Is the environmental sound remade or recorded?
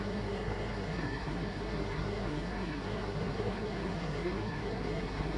remade